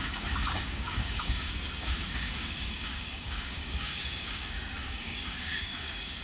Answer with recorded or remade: remade